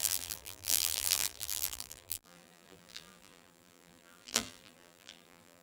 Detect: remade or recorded remade